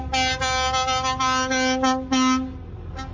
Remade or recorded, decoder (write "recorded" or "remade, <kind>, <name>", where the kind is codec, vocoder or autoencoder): recorded